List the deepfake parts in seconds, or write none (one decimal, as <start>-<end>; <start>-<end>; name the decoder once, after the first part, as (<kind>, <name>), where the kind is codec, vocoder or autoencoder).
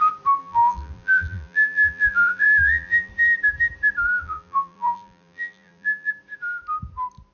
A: 0.4-3.1 (vocoder, BigVGAN v2); 4.1-6.1